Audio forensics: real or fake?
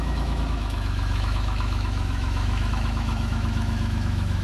fake